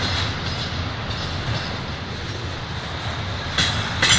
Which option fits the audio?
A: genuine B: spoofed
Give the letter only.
A